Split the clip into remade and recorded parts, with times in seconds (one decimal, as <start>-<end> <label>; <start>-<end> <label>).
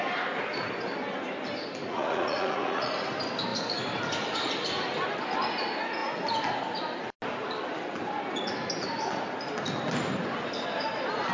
0.0-1.8 recorded; 1.8-2.9 remade; 2.9-11.3 recorded